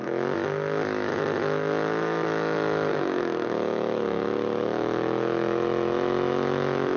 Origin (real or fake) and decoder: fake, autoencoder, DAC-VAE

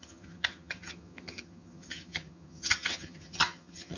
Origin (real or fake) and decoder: fake, vocoder, HiFi-GAN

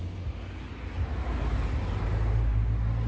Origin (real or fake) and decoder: real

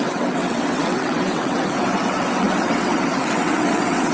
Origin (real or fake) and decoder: fake, vocoder, WaveNeXt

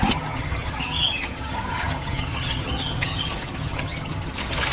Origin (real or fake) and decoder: fake, vocoder, HiFi-GAN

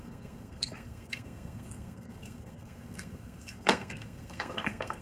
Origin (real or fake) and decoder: fake, codec, SNAC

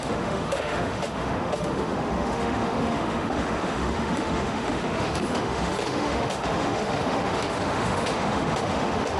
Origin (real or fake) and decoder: fake, autoencoder, DAC-VAE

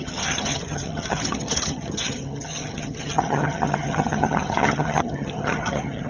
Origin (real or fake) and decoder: fake, vocoder, HiFi-GAN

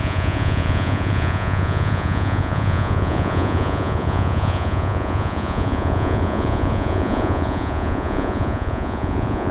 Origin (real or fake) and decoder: fake, vocoder, Vocos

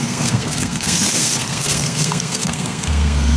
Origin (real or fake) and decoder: fake, codec, SNAC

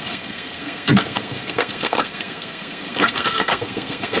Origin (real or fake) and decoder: fake, codec, SNAC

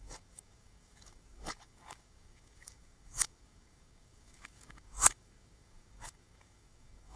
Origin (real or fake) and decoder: fake, codec, DAC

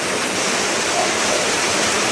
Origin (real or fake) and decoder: real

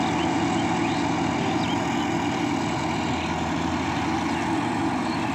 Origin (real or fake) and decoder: real